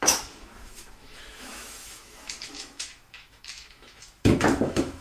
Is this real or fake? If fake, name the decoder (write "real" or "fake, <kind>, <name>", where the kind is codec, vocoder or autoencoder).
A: fake, autoencoder, DAC-VAE